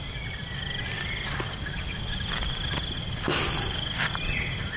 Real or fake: real